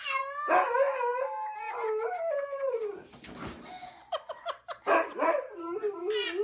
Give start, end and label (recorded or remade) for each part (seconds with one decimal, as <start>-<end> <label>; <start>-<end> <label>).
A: 0.0-6.4 remade

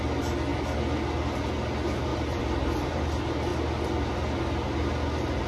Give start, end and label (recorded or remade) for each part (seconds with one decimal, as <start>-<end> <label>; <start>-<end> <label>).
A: 0.0-2.1 recorded; 2.1-3.0 remade; 3.0-5.5 recorded